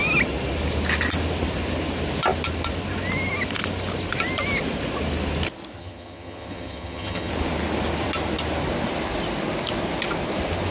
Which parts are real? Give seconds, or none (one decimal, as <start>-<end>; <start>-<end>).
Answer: 0.0-5.8; 7.3-10.7